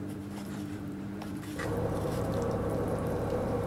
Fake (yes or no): yes